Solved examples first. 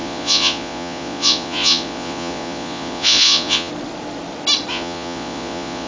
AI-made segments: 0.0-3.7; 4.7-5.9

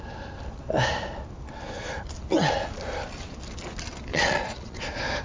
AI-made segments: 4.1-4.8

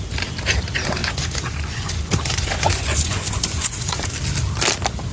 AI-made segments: 1.0-4.1

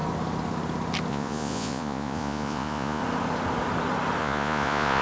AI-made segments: 1.1-3.0; 4.2-5.0

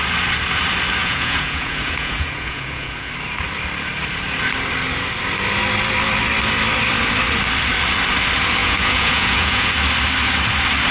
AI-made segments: 1.0-3.1; 8.6-9.7

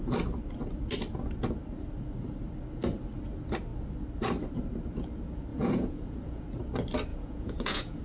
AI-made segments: 5.5-6.4; 7.1-8.0